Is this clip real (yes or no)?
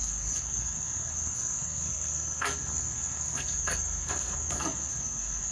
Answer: no